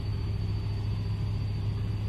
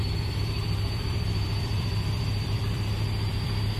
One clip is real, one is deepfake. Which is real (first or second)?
first